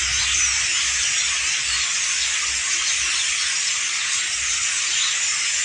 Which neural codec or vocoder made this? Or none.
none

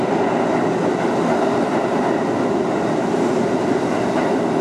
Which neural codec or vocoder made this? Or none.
none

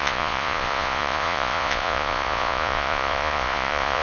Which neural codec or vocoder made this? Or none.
vocoder, Vocos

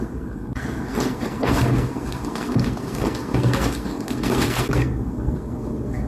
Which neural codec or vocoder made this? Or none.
codec, SNAC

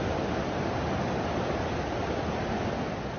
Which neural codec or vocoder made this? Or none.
none